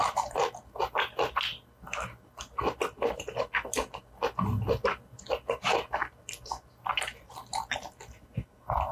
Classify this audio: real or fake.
real